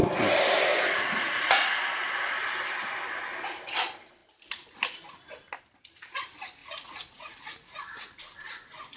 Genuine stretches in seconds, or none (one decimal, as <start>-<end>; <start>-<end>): 0.0-0.7; 1.8-6.6; 8.2-9.0